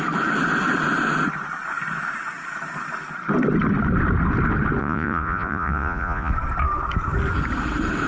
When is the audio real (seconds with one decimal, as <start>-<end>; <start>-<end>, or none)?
0.0-4.8; 6.3-8.1